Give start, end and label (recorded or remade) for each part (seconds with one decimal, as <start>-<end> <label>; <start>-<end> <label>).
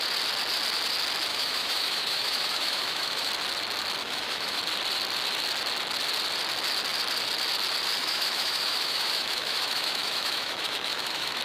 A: 0.0-1.3 recorded; 1.3-3.3 remade; 3.3-4.0 recorded; 4.0-4.6 remade; 4.6-8.0 recorded; 8.0-11.4 remade